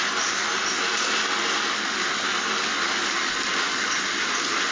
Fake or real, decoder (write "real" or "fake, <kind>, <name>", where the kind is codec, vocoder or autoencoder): real